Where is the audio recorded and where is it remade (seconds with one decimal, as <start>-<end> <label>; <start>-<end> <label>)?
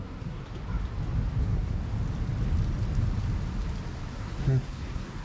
0.0-0.4 remade; 0.4-1.4 recorded; 1.4-1.8 remade; 1.8-4.1 recorded; 4.1-5.2 remade